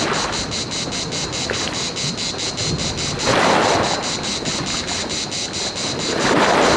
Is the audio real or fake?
real